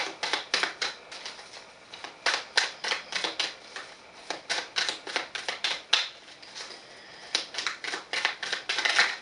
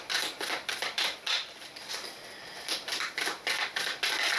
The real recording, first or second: first